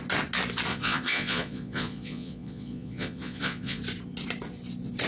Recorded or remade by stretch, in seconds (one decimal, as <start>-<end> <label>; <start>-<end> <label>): 0.0-0.7 recorded; 0.7-3.8 remade; 3.8-5.1 recorded